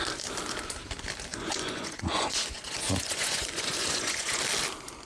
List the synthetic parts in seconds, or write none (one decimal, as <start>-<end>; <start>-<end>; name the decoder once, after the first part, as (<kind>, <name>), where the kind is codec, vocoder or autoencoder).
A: 1.3-4.4 (vocoder, Vocos)